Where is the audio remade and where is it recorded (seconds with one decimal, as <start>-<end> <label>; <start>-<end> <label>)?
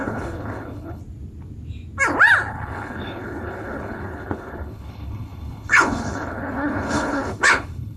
0.0-1.0 remade; 1.0-2.5 recorded; 2.5-8.0 remade